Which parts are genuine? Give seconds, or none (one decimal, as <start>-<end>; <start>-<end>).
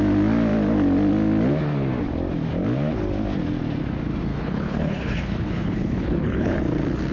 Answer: 0.0-4.3; 6.6-7.1